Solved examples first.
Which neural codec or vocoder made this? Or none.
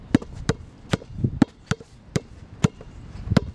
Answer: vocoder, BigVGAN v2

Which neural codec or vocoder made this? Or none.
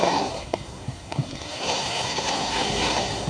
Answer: codec, SNAC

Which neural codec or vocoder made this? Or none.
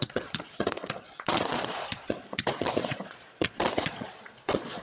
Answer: vocoder, Vocos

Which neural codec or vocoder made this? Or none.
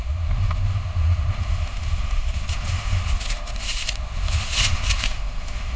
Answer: autoencoder, DAC-VAE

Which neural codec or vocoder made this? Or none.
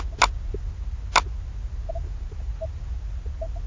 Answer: none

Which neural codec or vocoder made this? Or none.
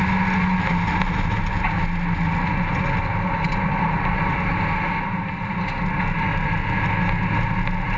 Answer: none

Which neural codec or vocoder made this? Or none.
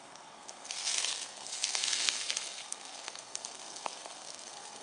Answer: codec, SNAC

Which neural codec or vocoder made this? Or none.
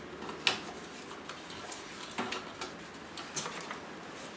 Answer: none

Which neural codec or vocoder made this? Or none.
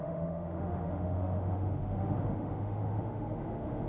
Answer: autoencoder, DAC-VAE